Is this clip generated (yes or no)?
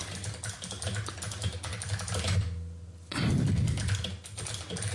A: no